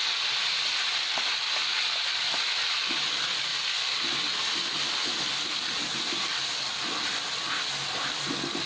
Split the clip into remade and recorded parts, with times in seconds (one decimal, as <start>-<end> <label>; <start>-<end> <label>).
0.0-8.7 recorded